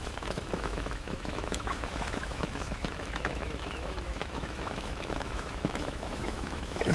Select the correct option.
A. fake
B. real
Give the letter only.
A